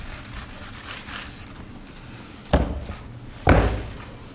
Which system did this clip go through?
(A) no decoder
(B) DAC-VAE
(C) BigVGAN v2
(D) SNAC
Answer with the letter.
A